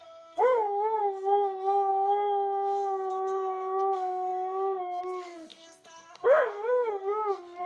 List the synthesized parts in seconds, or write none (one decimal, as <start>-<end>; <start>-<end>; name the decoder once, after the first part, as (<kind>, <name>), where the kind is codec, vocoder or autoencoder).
0.0-7.7 (codec, SNAC)